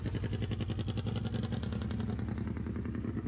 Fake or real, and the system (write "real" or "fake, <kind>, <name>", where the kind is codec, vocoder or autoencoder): real